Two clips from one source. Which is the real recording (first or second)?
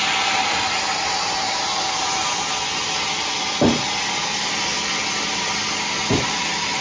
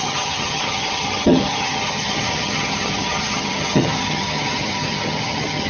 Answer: first